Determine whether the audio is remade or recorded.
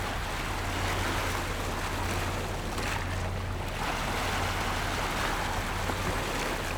recorded